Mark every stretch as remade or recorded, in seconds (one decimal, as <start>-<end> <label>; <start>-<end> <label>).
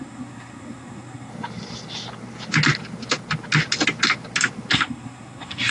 0.0-1.3 remade; 1.3-4.7 recorded; 4.7-5.7 remade